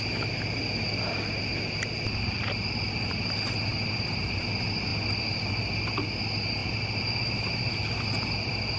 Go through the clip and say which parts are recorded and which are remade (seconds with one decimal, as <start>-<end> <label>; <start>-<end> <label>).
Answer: 0.0-3.7 recorded; 3.7-4.4 remade; 4.4-6.6 recorded; 6.6-7.6 remade; 7.6-8.8 recorded